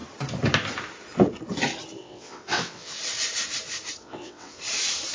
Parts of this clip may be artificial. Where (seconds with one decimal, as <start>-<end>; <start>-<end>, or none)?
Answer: 2.0-3.0; 4.0-4.6

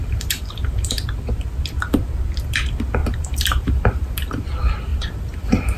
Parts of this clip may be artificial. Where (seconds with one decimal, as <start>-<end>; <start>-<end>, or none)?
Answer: 0.0-1.1; 3.0-4.4; 4.9-5.8

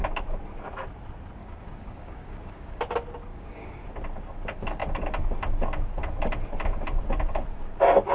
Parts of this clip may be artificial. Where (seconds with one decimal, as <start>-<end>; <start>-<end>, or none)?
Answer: 1.4-2.8; 3.3-3.9

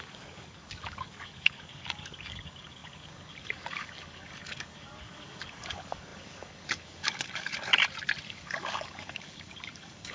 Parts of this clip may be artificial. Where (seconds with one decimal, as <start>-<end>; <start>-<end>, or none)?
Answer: 0.0-7.7; 8.3-10.1

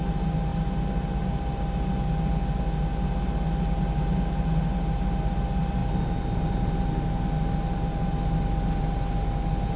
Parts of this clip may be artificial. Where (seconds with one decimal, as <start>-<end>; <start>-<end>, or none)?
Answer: none

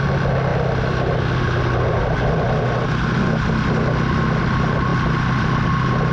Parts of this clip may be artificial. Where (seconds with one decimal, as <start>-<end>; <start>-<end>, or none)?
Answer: none